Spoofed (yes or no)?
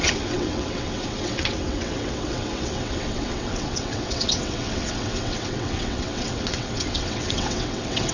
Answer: yes